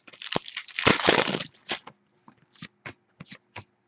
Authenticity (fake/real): real